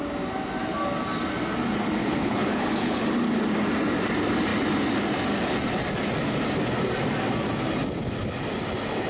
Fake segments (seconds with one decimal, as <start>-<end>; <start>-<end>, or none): 2.0-3.1